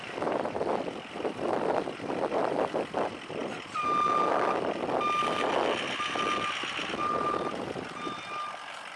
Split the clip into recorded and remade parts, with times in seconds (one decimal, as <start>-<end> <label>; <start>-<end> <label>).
0.0-3.4 remade; 3.4-6.8 recorded; 6.8-9.0 remade